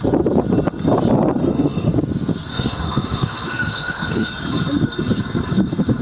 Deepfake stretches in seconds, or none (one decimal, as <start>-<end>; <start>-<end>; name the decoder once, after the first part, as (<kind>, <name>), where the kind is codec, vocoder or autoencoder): 1.4-1.9 (autoencoder, DAC-VAE); 2.5-4.3